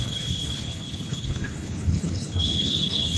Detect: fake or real fake